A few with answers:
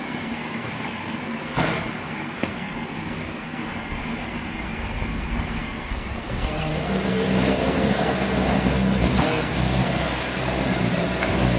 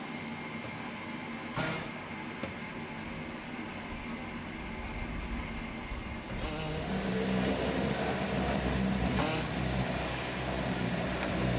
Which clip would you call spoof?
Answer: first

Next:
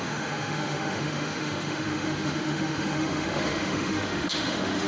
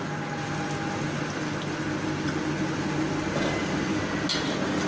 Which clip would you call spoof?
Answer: first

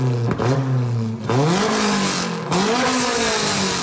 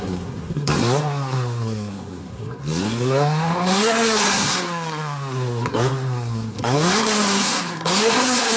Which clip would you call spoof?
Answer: second